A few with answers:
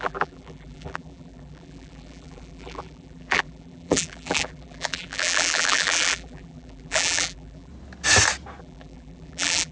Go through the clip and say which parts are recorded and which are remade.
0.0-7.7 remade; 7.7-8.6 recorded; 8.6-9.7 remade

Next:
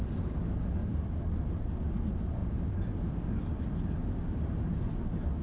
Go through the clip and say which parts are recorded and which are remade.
0.0-0.8 recorded; 0.8-1.7 remade; 1.7-2.4 recorded; 2.4-4.9 remade; 4.9-5.4 recorded

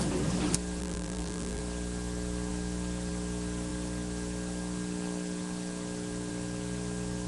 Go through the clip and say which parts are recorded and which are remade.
0.0-0.8 recorded; 0.8-1.6 remade; 1.6-7.3 recorded

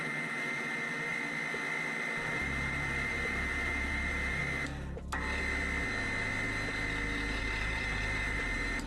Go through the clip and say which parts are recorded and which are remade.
0.0-1.1 remade; 1.1-2.3 recorded; 2.3-4.4 remade; 4.4-7.4 recorded; 7.4-8.9 remade

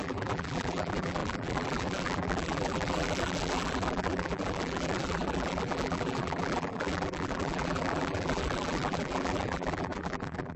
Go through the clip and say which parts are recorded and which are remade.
0.0-10.6 remade

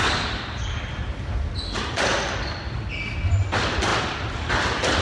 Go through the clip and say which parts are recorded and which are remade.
0.0-5.0 recorded